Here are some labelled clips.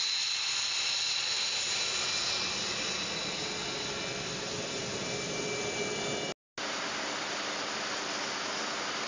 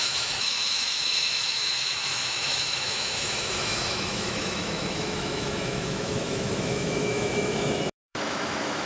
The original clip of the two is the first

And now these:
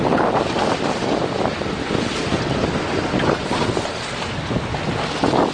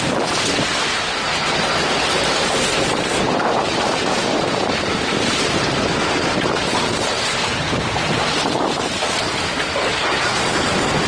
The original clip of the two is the first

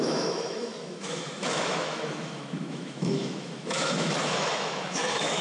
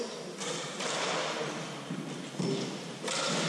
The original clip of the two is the second